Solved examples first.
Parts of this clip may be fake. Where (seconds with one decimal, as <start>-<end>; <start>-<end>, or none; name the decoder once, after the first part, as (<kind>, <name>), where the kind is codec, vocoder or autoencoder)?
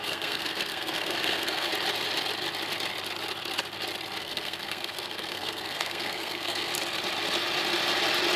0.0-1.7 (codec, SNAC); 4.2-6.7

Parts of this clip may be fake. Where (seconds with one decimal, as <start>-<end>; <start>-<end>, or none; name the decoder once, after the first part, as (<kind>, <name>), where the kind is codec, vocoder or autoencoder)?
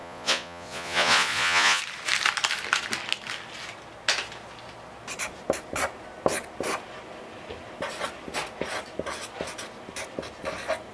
0.0-1.8 (vocoder, Vocos)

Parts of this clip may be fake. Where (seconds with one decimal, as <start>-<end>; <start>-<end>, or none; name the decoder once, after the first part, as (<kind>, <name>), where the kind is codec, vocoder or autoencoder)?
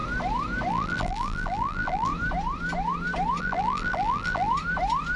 0.7-2.1 (vocoder, BigVGAN v2); 3.4-4.5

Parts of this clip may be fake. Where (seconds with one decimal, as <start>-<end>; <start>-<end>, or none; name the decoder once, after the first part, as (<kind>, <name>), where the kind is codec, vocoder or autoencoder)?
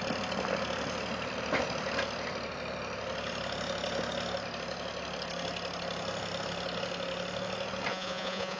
7.9-8.6 (vocoder, Vocos)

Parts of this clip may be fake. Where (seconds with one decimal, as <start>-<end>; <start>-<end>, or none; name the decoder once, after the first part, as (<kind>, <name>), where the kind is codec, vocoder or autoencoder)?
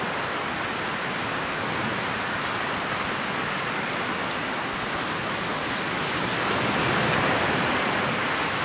1.0-1.8 (codec, DAC)